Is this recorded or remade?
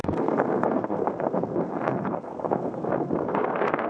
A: remade